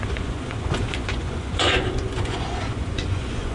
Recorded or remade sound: remade